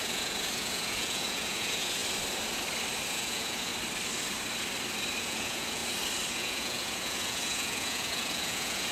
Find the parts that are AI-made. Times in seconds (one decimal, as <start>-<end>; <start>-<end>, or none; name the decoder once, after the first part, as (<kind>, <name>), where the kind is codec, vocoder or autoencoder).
0.0-2.0 (vocoder, Vocos); 3.1-3.7; 5.2-5.8; 6.3-8.9